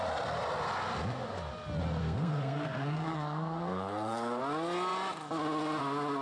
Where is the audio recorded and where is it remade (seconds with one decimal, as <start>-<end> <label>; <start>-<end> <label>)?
0.0-2.0 recorded; 2.0-4.4 remade; 4.4-6.2 recorded